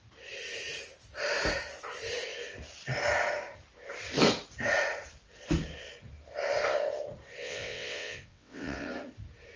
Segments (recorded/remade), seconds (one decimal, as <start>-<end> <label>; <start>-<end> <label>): 0.0-7.4 recorded; 7.4-8.9 remade; 8.9-9.6 recorded